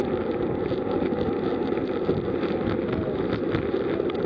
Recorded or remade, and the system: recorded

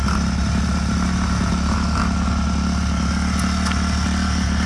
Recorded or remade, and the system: recorded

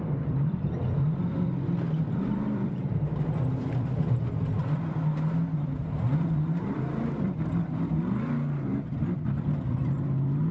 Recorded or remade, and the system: remade, vocoder, BigVGAN v2